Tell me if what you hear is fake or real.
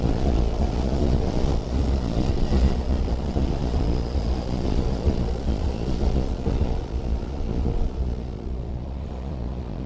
fake